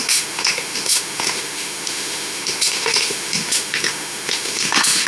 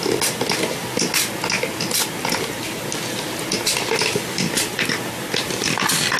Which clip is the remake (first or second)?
first